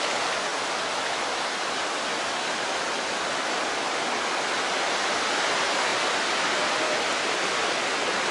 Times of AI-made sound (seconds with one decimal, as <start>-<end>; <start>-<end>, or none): none